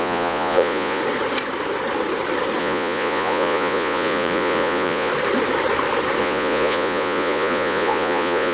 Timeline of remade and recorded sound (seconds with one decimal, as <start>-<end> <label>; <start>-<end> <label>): 0.0-1.0 remade; 1.0-2.6 recorded; 2.6-5.1 remade; 5.1-6.2 recorded; 6.2-8.5 remade